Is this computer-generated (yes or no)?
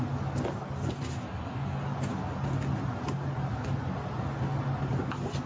no